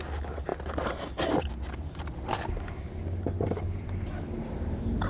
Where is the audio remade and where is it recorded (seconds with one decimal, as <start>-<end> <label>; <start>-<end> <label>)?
0.0-5.1 recorded